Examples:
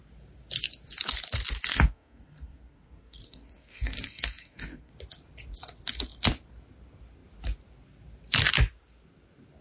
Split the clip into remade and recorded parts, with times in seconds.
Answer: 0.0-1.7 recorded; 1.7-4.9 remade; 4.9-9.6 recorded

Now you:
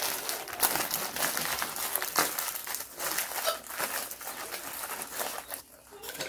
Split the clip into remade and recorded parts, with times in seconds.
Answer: 0.0-6.3 recorded